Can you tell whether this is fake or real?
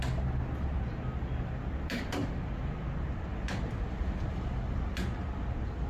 real